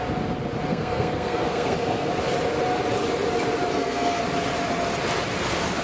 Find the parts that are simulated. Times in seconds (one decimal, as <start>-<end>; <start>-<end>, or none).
0.7-2.1; 3.7-4.2